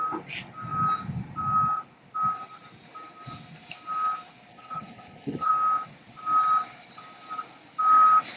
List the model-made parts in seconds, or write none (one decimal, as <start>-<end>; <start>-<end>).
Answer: 4.5-5.5